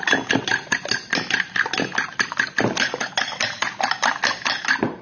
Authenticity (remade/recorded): recorded